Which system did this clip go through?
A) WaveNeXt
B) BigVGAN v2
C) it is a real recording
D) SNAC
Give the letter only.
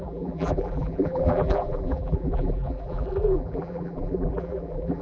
B